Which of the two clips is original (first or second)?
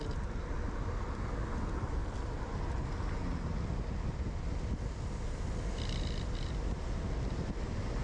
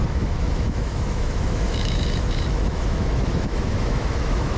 first